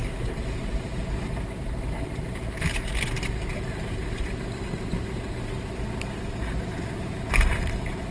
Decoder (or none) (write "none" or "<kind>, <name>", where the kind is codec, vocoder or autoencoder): none